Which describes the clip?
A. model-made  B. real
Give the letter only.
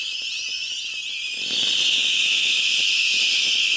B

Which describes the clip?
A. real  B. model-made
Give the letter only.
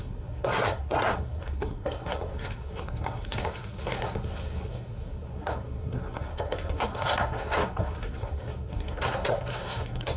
B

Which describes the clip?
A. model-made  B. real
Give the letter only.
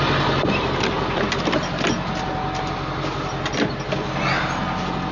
B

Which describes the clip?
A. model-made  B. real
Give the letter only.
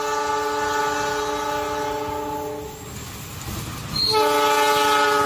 B